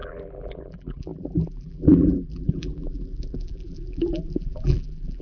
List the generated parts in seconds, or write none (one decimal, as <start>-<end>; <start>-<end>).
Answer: 0.0-5.2